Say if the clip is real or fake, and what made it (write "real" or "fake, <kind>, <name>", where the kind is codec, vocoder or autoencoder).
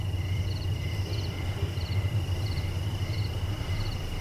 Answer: fake, vocoder, BigVGAN v2